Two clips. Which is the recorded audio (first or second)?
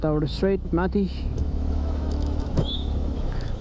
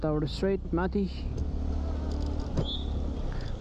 second